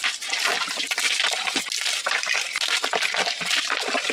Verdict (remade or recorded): recorded